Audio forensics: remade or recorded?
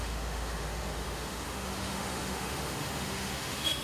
remade